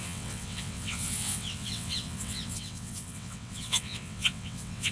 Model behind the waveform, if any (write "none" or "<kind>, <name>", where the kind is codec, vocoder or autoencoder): vocoder, WaveNeXt